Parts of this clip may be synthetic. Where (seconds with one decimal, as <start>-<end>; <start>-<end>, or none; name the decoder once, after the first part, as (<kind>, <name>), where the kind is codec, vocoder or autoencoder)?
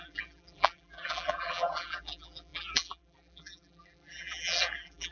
0.0-5.1 (vocoder, BigVGAN v2)